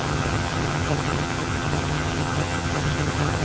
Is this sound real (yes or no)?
no